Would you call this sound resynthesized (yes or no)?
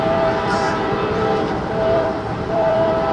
yes